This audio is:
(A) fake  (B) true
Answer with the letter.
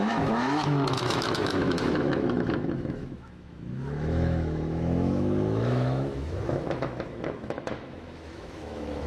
A